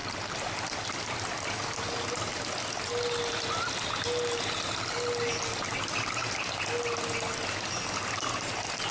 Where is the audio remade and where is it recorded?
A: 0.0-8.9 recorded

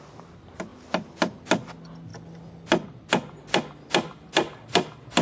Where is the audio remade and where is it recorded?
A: 0.0-5.2 recorded